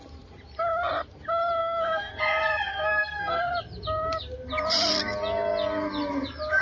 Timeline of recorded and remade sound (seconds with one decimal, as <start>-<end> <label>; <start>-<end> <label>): 0.0-1.6 recorded; 1.6-2.2 remade; 2.2-2.7 recorded; 2.7-3.5 remade; 3.5-6.6 recorded